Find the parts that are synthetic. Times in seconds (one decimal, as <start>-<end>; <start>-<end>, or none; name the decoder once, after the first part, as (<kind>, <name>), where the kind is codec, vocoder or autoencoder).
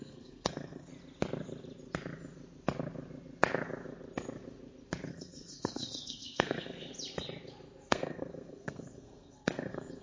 0.0-0.9 (codec, SNAC); 5.1-6.9; 7.9-10.0